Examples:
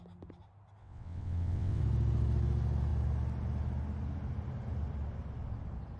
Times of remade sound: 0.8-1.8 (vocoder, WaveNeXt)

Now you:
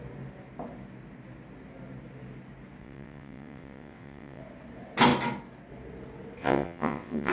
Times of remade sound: 2.8-4.4 (vocoder, WaveNeXt); 6.4-7.3

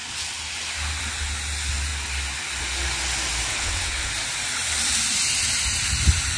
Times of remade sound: 3.5-4.1 (vocoder, WaveNeXt)

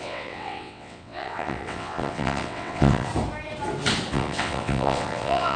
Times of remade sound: 0.0-3.1 (vocoder, WaveNeXt); 4.1-5.6

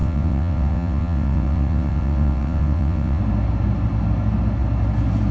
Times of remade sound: 0.0-3.2 (vocoder, WaveNeXt)